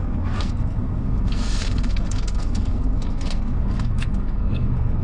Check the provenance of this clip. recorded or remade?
remade